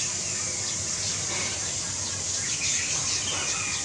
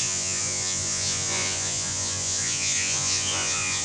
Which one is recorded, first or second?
first